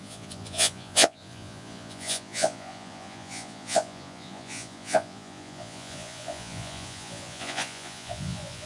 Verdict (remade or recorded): remade